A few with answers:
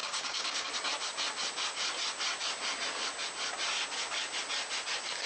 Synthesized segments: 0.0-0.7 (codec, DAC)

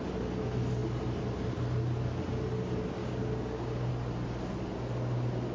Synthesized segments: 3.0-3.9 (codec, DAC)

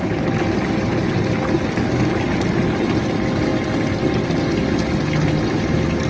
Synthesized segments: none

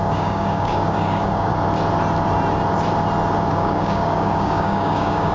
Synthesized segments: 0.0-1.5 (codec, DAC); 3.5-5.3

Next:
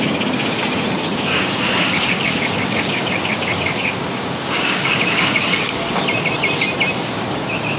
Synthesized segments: 1.3-6.0 (codec, DAC)